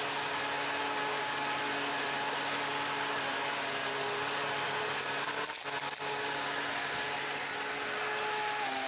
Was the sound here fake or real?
real